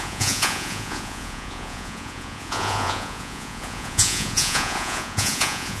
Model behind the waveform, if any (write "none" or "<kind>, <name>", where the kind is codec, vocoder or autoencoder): vocoder, Vocos